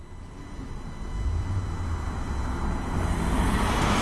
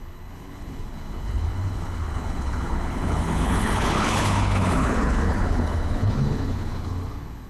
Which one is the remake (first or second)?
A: second